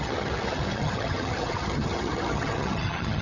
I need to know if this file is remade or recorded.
remade